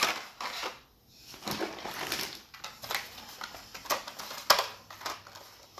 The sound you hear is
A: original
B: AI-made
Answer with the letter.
A